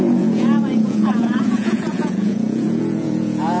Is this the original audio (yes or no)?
no